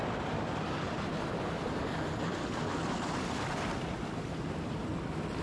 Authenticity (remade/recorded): recorded